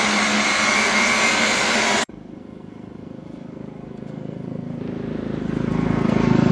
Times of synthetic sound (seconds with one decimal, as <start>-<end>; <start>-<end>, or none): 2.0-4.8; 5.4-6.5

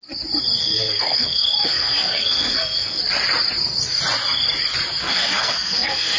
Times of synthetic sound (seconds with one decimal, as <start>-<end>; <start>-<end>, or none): 0.6-3.0; 5.0-6.2

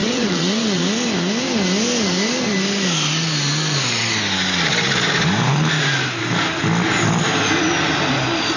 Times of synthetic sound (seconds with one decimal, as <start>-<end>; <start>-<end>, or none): 0.0-0.8

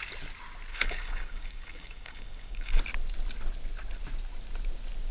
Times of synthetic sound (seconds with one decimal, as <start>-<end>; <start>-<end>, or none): 0.7-2.7

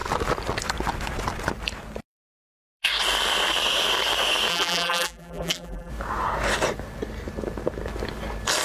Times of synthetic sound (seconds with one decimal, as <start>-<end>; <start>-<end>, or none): 4.5-5.9

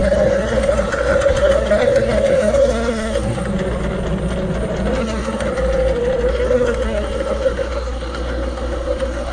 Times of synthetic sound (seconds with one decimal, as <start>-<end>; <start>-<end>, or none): 0.0-3.5; 5.0-5.5; 6.3-9.3

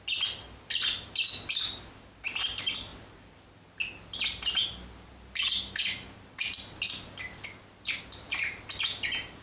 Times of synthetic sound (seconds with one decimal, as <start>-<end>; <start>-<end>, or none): none

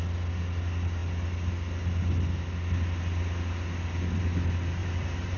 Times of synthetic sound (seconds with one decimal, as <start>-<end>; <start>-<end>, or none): 4.8-5.4